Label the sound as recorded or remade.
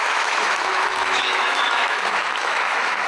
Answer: remade